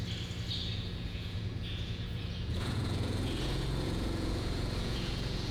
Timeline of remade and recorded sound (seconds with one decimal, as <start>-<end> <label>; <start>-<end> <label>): 0.0-0.9 recorded; 0.9-5.5 remade